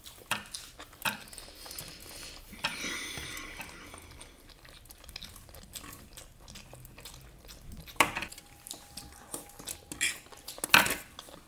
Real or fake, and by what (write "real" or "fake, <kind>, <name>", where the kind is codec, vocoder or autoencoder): real